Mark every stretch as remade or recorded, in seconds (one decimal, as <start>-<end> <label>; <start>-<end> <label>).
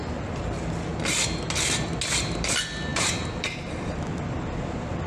0.0-0.9 remade; 0.9-2.3 recorded; 2.3-5.1 remade